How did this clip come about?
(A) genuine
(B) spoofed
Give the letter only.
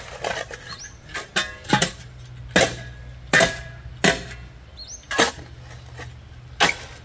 A